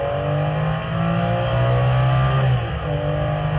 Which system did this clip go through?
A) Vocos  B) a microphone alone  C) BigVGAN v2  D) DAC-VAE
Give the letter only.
B